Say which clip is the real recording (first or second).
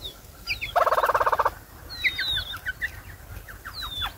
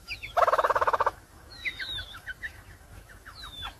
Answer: first